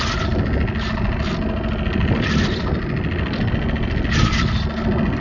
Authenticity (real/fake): real